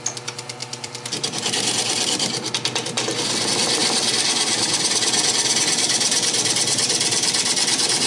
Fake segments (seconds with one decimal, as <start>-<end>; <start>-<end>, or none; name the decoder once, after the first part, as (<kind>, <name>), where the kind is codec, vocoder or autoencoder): 0.6-2.5 (vocoder, BigVGAN v2); 3.8-5.3